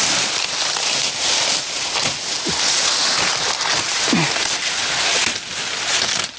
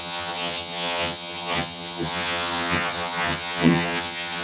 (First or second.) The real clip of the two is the first